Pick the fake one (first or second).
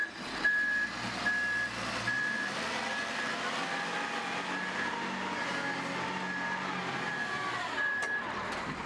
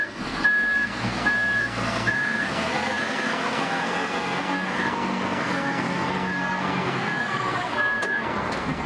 second